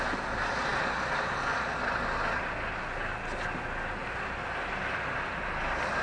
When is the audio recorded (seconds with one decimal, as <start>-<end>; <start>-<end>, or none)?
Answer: 0.0-6.0